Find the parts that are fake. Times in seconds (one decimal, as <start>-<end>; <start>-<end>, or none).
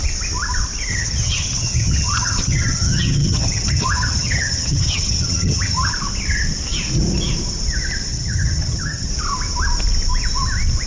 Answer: 0.9-5.9; 8.1-9.1